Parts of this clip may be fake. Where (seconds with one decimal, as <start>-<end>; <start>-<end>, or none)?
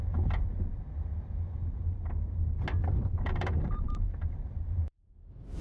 2.8-5.6